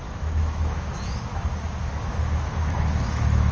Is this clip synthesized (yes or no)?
yes